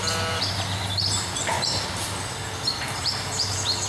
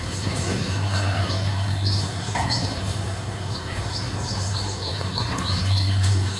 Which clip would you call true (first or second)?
first